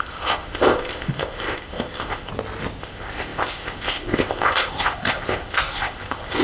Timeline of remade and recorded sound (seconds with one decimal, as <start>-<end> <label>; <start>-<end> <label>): 0.0-2.3 remade; 2.3-2.8 recorded; 2.8-6.4 remade